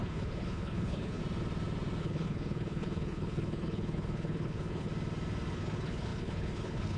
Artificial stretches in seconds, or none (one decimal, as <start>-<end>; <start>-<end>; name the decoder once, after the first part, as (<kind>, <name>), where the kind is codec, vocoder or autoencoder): 0.0-1.2 (codec, HILCodec); 2.0-4.9; 5.5-7.0